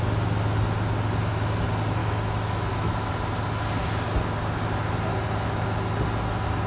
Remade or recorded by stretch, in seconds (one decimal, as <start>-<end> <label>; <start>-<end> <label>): 0.0-2.0 recorded; 2.0-3.1 remade; 3.1-6.7 recorded